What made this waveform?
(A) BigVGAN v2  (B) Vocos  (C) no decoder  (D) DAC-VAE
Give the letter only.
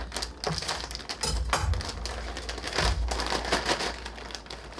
C